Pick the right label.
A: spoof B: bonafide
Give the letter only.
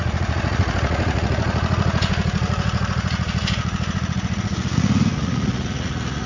A